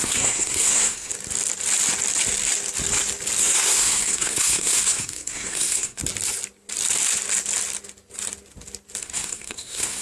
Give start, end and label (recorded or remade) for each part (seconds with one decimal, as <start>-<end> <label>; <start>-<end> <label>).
0.0-1.1 remade; 1.1-3.4 recorded; 3.4-6.0 remade; 6.0-9.0 recorded; 9.0-10.0 remade